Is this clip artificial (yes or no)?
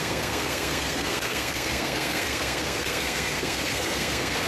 yes